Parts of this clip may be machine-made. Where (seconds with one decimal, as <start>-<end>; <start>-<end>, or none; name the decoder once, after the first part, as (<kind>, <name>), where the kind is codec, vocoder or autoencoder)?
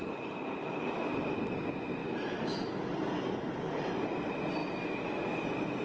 2.0-2.7 (autoencoder, DAC-VAE); 4.6-5.2